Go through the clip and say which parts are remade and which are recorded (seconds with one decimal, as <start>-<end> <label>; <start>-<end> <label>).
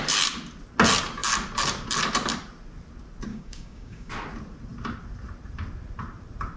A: 0.0-3.3 recorded; 3.3-4.1 remade; 4.1-6.6 recorded